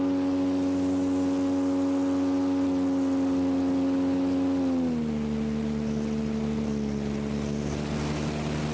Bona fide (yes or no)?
yes